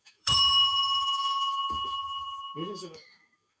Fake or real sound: fake